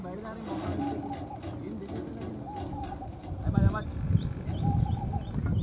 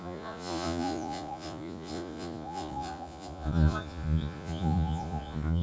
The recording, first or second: first